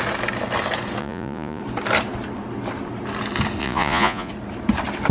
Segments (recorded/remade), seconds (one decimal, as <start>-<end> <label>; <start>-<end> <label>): 0.0-1.0 recorded; 1.0-1.6 remade; 1.6-3.6 recorded; 3.6-4.3 remade; 4.3-5.1 recorded